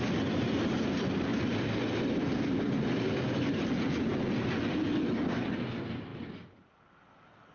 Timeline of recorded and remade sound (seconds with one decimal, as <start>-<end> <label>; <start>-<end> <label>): 0.0-7.5 recorded